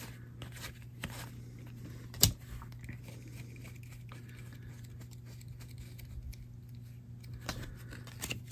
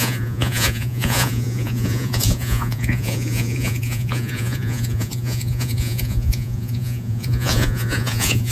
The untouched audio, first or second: first